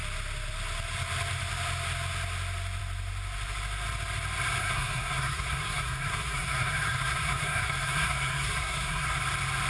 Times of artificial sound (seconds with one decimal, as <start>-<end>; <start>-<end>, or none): 4.6-9.2